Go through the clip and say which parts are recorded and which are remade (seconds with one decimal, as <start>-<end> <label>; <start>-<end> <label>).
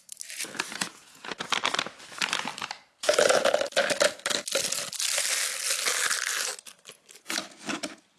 0.0-0.8 recorded; 0.8-1.5 remade; 1.5-8.2 recorded